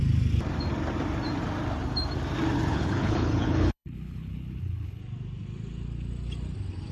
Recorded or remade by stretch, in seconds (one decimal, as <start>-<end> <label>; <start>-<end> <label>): 0.0-2.7 recorded; 2.7-5.0 remade; 5.0-6.9 recorded